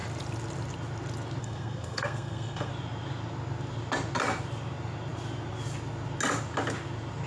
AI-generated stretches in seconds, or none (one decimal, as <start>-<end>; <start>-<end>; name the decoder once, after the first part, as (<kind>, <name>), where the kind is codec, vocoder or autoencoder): 1.4-2.7 (codec, SNAC)